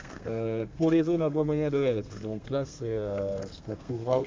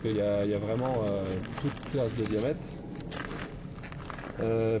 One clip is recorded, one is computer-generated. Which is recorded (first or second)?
second